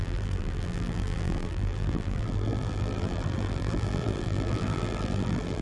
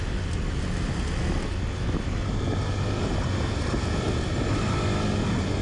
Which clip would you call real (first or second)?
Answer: second